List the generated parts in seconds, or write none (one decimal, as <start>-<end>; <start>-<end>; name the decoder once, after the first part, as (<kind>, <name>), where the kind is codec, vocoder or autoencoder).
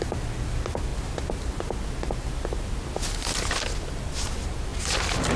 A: none